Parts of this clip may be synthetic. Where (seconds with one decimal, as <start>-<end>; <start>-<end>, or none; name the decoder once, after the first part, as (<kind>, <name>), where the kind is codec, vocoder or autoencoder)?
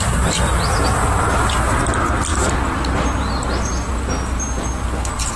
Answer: none